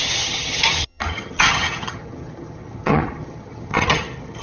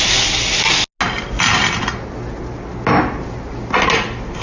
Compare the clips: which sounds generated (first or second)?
first